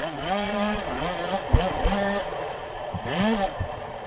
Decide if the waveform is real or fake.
fake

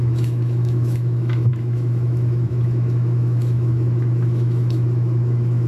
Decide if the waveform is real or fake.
fake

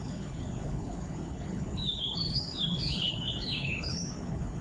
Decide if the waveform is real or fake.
fake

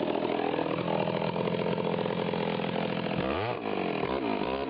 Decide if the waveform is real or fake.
real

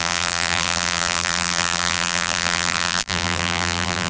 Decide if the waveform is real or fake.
fake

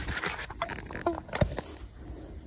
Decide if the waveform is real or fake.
real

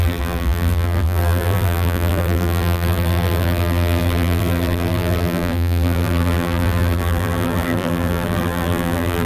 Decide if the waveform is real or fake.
fake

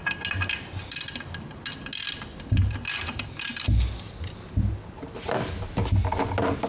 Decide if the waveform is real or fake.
real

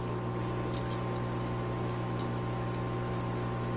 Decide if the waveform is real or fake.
real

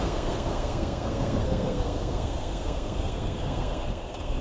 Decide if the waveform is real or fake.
fake